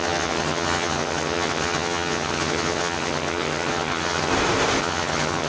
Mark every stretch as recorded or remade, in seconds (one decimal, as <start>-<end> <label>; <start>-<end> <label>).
0.0-4.3 remade; 4.3-4.8 recorded; 4.8-5.5 remade